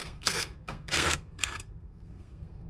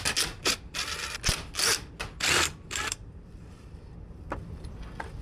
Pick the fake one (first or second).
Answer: first